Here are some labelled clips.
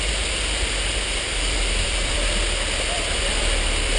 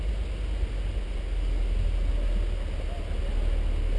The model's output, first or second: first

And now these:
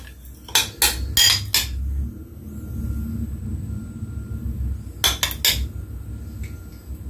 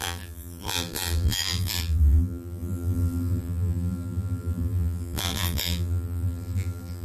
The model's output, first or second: second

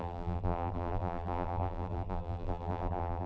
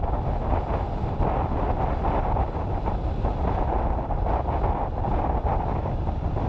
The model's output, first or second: first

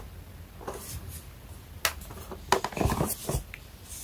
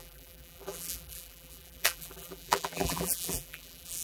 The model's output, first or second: second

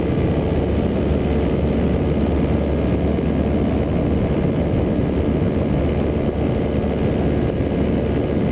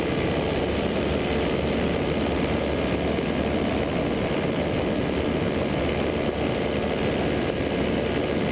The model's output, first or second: second